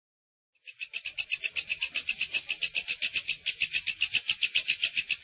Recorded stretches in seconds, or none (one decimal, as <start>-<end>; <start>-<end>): 0.0-5.2